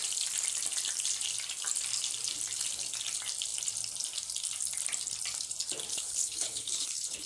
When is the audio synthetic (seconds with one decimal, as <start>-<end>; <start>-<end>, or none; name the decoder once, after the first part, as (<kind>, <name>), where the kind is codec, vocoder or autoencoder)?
5.9-7.3 (codec, HILCodec)